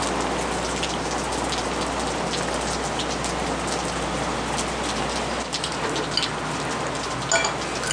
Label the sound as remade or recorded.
recorded